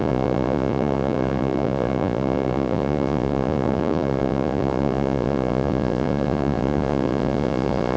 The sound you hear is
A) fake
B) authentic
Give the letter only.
A